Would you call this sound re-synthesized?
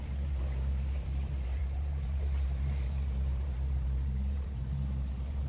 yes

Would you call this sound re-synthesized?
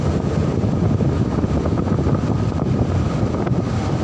yes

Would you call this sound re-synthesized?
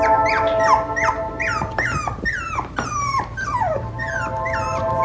yes